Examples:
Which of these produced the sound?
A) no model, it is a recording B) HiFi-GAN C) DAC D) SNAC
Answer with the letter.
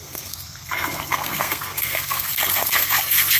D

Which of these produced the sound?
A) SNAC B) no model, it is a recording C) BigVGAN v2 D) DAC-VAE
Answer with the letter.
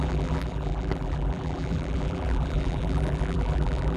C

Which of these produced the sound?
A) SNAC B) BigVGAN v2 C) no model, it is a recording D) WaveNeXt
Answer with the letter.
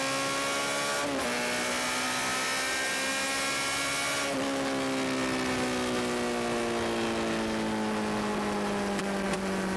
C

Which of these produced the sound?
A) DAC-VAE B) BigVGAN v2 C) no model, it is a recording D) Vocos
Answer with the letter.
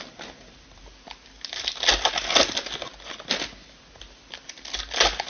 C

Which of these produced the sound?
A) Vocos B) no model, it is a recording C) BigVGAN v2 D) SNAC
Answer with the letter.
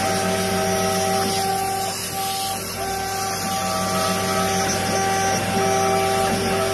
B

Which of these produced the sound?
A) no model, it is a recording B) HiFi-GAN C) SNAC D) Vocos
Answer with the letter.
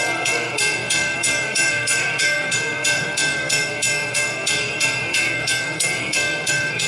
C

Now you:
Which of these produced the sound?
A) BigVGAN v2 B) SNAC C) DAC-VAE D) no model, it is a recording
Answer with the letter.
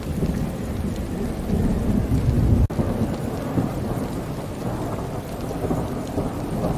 D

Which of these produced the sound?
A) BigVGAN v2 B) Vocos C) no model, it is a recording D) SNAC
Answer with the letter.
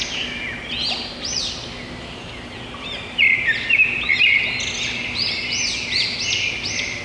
C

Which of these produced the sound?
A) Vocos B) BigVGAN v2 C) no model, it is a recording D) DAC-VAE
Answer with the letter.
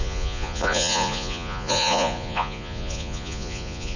A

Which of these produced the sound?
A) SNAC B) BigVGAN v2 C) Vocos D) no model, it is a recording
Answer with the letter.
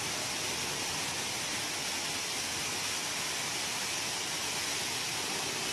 D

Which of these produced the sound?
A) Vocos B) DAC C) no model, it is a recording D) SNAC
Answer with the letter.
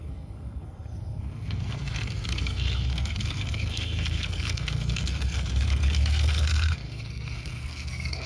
D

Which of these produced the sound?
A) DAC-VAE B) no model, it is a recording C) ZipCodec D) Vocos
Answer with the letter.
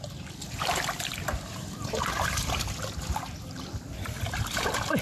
B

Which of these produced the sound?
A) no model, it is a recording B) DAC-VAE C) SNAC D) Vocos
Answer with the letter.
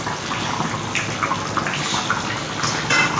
A